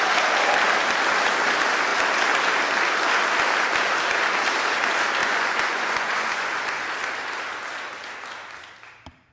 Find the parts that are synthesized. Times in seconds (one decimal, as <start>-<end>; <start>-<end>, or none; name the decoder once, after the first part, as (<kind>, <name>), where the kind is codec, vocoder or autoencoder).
5.2-6.8 (vocoder, Vocos)